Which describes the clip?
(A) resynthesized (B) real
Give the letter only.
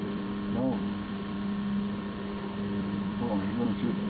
A